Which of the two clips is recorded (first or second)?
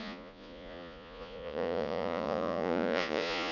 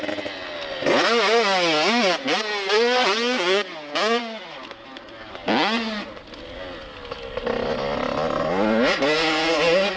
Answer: second